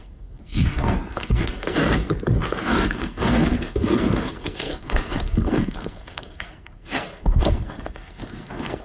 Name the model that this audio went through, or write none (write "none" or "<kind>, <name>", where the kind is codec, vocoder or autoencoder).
codec, SNAC